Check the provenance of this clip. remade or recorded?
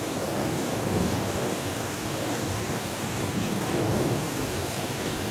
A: remade